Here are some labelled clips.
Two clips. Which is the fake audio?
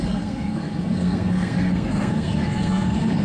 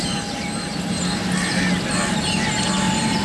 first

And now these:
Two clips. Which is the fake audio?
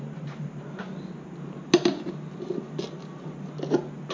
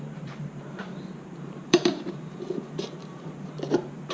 second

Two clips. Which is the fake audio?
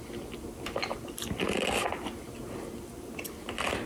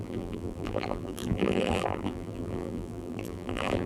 second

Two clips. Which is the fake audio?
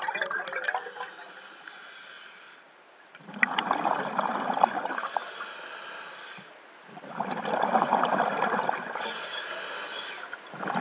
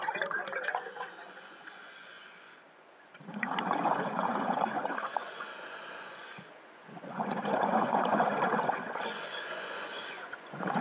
second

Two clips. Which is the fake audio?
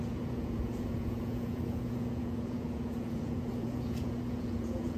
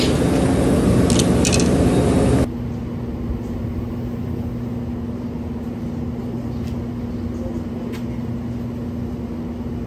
first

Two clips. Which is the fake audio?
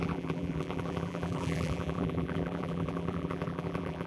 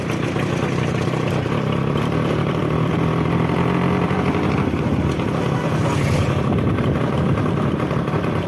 first